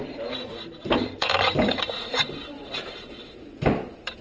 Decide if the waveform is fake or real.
fake